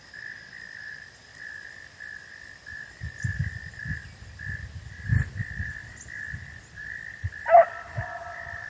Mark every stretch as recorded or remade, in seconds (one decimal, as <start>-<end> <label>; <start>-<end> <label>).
0.0-8.7 recorded